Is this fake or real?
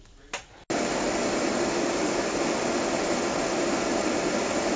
real